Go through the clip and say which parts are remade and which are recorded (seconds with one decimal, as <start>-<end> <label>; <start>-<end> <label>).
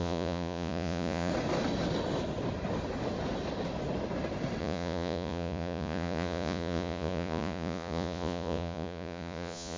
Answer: 0.0-1.3 remade; 1.3-4.6 recorded; 4.6-9.8 remade